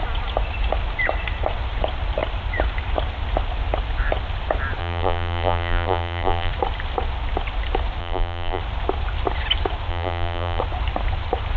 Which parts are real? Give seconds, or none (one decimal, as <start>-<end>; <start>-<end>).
0.0-4.8; 6.5-8.0; 8.6-9.9; 10.6-11.6